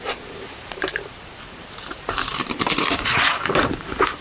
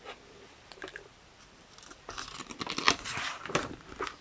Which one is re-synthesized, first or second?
first